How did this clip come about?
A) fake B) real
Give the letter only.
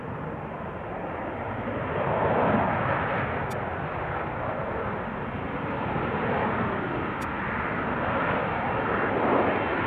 B